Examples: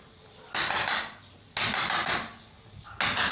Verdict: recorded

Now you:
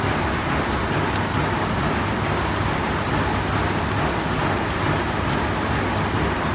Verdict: recorded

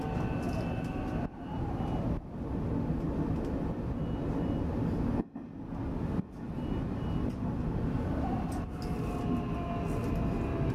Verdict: recorded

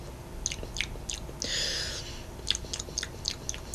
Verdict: recorded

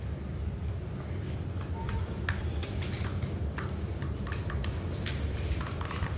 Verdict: recorded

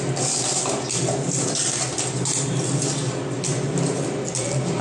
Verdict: recorded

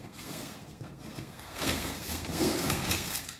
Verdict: remade